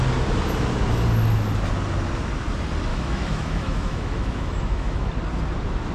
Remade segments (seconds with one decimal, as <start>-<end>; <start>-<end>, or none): 2.9-5.1